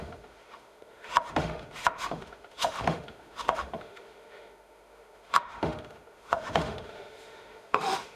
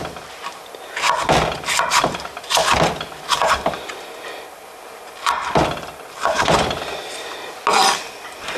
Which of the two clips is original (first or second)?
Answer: second